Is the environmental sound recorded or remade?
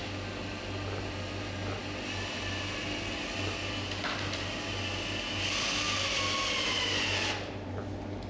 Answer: recorded